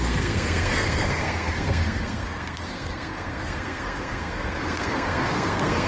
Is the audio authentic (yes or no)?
no